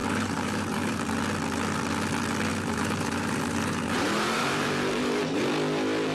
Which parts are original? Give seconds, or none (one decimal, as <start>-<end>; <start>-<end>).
1.0-2.5; 5.4-6.1